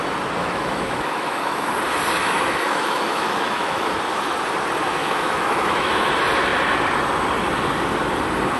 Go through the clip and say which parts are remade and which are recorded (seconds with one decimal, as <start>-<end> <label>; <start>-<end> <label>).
0.0-0.4 recorded; 0.4-1.7 remade; 1.7-2.2 recorded; 2.2-3.9 remade; 3.9-5.0 recorded; 5.0-6.1 remade; 6.1-8.6 recorded